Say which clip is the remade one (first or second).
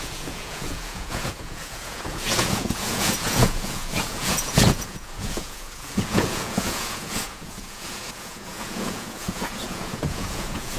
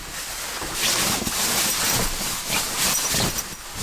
first